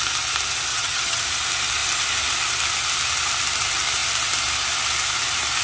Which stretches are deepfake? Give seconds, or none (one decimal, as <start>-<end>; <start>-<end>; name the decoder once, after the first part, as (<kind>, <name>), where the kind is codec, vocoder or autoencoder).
0.7-1.2 (vocoder, HiFi-GAN)